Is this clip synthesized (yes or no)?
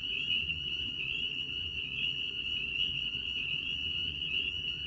yes